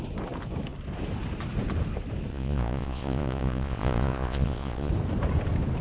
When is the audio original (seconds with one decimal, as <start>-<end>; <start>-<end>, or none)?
0.0-2.3; 4.9-5.8